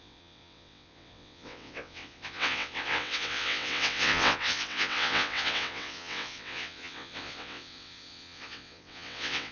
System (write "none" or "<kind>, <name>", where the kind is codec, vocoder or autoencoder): vocoder, WaveNeXt